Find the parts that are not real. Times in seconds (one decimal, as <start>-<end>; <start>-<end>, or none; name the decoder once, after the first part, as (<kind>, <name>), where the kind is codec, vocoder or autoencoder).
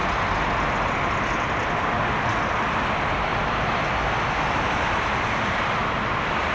none